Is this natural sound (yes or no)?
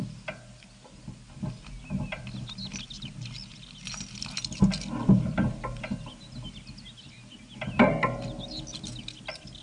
yes